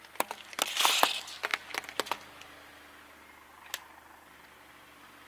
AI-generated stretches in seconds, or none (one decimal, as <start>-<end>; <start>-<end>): none